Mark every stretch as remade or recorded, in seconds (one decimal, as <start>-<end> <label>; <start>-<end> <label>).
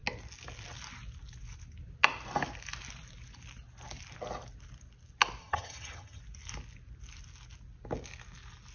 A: 0.0-5.4 recorded; 5.4-6.2 remade; 6.2-8.7 recorded